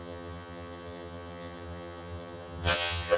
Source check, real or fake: fake